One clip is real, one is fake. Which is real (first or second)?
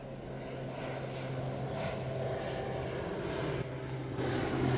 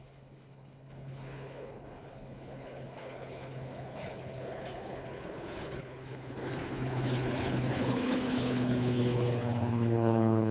first